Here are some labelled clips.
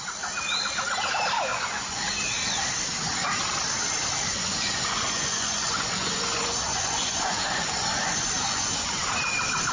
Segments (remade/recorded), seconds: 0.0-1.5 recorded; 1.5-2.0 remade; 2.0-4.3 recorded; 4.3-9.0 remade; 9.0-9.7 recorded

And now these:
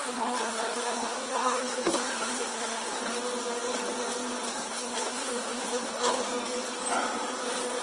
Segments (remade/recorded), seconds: 0.0-3.0 remade; 3.0-4.5 recorded; 4.5-6.2 remade; 6.2-7.8 recorded

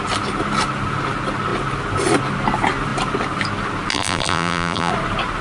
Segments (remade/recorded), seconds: 0.0-3.9 recorded; 3.9-4.9 remade; 4.9-5.4 recorded

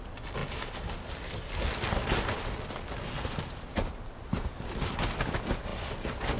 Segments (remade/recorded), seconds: 0.0-6.4 recorded

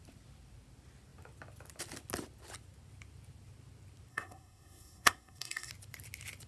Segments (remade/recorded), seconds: 0.0-4.1 recorded; 4.1-5.7 remade; 5.7-6.5 recorded

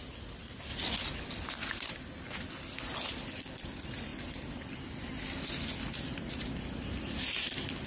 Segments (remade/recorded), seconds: 0.0-7.9 recorded

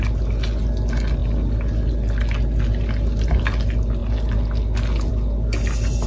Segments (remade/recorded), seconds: 0.0-6.1 recorded

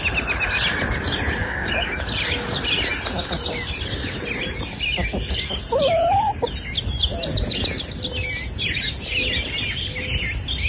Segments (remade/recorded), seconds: 0.0-1.4 recorded; 1.4-1.9 remade; 1.9-10.7 recorded